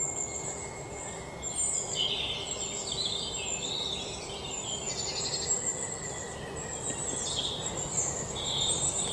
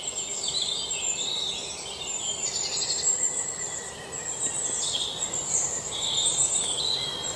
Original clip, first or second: first